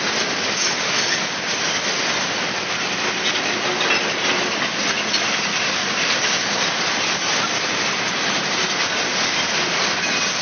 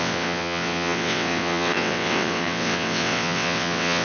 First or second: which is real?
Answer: first